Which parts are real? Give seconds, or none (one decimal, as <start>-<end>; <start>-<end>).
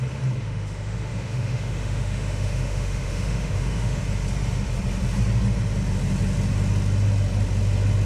0.0-0.4; 4.0-8.1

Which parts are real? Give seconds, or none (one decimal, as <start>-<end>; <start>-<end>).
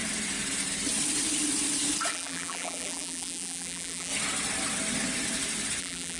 0.0-2.1; 4.1-5.8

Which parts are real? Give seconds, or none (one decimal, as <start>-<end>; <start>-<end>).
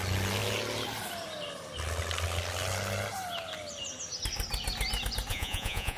0.0-5.3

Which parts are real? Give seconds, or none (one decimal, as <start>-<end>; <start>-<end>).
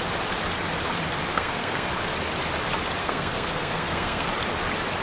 0.0-1.3; 1.9-3.0; 4.3-5.0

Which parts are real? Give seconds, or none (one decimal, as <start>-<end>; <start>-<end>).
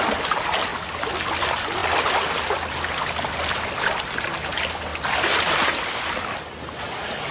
0.0-7.3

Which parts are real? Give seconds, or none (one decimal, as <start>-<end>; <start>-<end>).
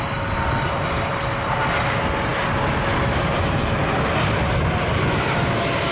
0.0-5.9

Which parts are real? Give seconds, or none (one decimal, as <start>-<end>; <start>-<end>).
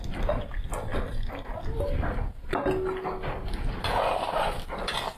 0.0-5.2